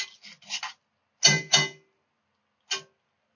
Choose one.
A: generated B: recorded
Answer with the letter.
B